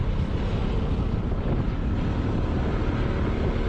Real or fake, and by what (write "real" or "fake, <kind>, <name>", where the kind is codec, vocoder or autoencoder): real